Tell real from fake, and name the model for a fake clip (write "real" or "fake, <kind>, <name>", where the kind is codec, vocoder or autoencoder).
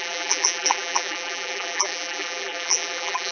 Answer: fake, vocoder, BigVGAN v2